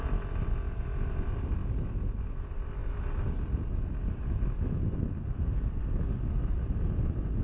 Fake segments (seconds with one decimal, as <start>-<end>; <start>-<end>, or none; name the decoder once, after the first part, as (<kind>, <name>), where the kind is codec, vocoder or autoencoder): none

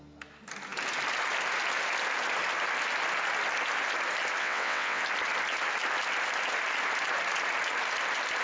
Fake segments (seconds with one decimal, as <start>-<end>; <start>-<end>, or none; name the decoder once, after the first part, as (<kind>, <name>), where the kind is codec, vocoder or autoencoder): 4.4-5.0 (vocoder, WaveNeXt)

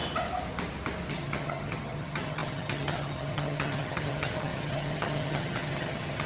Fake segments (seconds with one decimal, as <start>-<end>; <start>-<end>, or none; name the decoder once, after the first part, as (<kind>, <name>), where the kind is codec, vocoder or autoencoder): 1.1-6.3 (vocoder, HiFi-GAN)

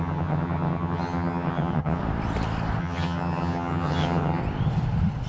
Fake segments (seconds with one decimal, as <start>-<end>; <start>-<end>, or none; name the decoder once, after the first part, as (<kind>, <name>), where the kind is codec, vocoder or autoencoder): 0.0-2.0 (vocoder, HiFi-GAN); 2.8-4.4